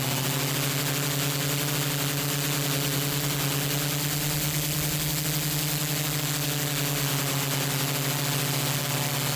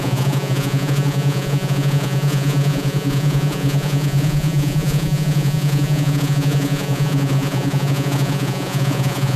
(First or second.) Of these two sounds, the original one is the first